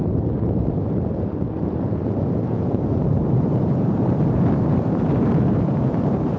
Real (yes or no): no